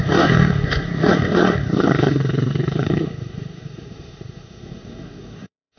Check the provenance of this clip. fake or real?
fake